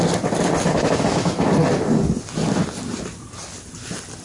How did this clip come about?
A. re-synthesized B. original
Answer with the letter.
B